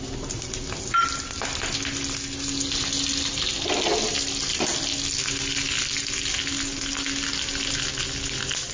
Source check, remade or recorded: recorded